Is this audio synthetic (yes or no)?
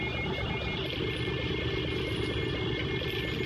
no